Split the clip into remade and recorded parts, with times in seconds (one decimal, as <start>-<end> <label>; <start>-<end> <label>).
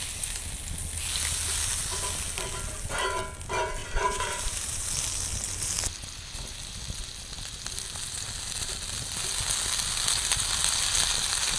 0.0-3.8 recorded; 3.8-4.9 remade; 4.9-11.6 recorded